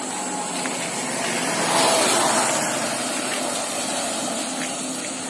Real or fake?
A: real